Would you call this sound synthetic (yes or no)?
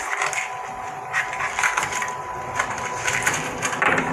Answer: no